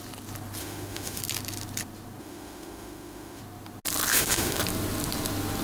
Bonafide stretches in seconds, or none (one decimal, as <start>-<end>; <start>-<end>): 0.0-0.6; 1.2-2.2; 3.4-4.1; 4.6-5.6